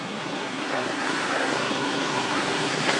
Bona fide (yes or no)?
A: no